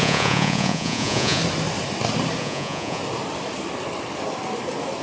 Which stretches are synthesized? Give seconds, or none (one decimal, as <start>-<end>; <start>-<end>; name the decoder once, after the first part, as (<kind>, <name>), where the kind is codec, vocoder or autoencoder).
0.0-1.4 (vocoder, Vocos); 2.4-3.0